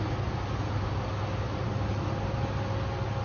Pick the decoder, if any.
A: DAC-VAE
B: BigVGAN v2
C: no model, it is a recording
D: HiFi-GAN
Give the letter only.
C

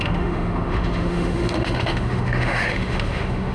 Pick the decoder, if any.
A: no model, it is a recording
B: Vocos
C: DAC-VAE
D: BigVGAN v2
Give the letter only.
C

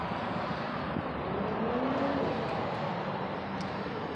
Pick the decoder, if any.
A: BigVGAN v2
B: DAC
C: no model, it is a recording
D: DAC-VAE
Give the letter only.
C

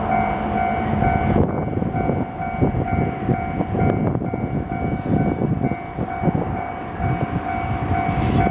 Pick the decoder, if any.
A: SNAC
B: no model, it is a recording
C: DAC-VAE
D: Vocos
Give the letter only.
B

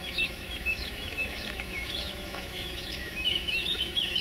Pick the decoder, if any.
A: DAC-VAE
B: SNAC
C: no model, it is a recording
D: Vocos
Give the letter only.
A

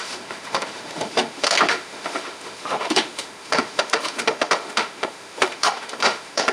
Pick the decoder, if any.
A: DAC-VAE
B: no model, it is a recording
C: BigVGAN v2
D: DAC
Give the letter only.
A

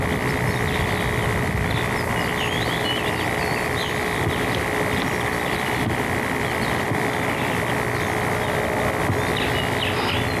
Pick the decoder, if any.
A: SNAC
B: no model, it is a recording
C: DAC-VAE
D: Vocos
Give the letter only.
B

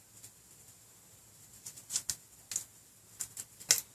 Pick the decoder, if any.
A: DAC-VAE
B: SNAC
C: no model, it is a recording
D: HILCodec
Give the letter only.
C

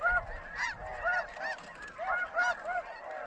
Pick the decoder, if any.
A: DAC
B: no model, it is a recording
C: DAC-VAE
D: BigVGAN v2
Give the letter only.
B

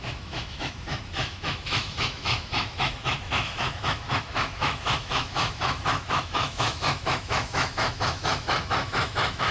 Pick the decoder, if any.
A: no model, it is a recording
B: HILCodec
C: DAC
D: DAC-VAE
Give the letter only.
D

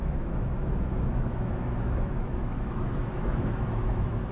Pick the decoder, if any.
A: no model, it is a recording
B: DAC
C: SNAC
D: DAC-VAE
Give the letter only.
D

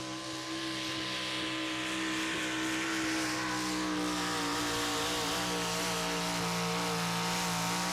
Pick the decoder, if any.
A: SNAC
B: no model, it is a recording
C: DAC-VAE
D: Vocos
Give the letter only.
B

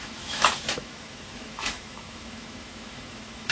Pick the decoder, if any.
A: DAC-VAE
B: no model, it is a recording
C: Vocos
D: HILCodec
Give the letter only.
A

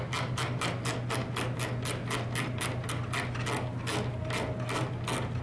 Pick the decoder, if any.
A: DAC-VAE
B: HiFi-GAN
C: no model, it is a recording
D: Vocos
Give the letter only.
C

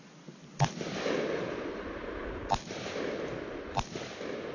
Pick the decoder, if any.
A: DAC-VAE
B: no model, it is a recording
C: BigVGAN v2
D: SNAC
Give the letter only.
B